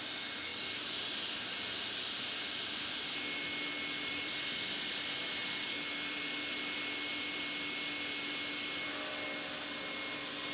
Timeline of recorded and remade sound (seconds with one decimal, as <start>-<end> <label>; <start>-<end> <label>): 0.0-10.5 recorded